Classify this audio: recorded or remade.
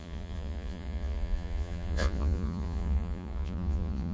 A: remade